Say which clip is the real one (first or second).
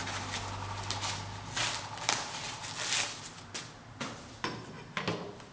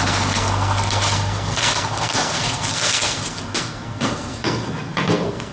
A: first